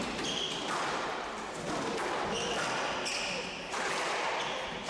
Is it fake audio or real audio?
real